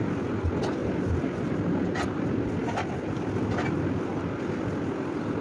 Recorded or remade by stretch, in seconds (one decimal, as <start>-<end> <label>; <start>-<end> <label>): 0.0-5.4 recorded